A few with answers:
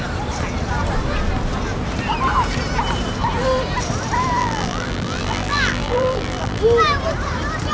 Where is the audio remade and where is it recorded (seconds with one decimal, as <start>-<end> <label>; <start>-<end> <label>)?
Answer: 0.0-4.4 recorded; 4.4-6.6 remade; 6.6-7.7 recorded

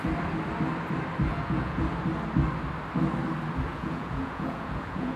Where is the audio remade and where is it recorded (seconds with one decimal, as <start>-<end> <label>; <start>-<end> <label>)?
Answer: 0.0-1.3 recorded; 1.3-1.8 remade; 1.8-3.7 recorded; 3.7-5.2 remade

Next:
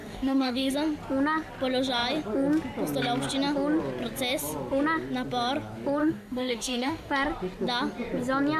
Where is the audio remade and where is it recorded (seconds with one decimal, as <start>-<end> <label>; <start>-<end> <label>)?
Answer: 0.0-0.7 remade; 0.7-6.0 recorded; 6.0-7.1 remade; 7.1-8.6 recorded

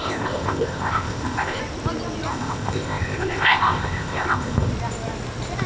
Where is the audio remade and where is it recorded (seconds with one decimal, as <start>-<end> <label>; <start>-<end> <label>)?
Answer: 0.0-1.6 remade; 1.6-2.3 recorded; 2.3-4.7 remade; 4.7-5.7 recorded